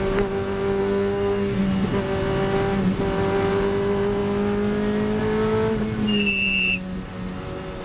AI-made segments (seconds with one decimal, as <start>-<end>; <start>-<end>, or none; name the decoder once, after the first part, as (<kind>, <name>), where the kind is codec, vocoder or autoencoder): 0.8-1.6 (codec, SNAC)

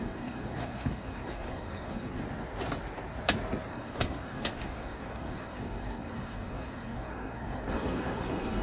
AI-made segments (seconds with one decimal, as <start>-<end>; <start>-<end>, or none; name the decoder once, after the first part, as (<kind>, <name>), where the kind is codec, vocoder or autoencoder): 0.0-2.2 (codec, SNAC); 3.7-8.6

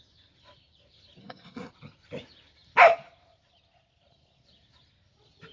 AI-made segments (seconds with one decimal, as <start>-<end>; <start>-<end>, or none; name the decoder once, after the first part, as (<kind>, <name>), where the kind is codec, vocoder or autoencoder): 1.2-1.7 (codec, SNAC)

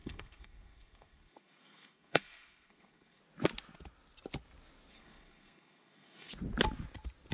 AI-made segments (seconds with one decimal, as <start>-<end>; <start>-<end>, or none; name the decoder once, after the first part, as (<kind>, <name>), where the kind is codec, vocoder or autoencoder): 0.0-3.2 (codec, SNAC); 4.9-6.3

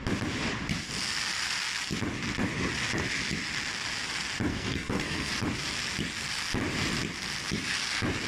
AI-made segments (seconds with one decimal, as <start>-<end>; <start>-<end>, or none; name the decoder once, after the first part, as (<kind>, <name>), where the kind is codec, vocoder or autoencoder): 4.5-5.3 (codec, SNAC)

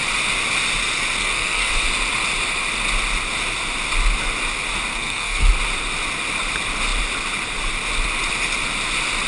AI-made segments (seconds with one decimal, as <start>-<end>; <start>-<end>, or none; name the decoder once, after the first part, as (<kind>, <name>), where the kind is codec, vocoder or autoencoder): 1.2-1.7 (codec, SNAC); 4.9-5.5